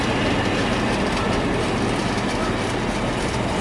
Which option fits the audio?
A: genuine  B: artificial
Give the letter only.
A